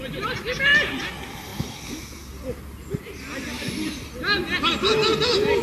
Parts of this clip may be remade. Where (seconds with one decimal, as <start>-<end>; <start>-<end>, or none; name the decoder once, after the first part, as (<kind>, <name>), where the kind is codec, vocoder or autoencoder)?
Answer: none